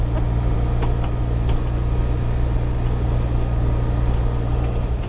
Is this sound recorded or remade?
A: recorded